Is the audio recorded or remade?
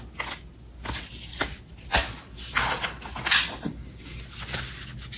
recorded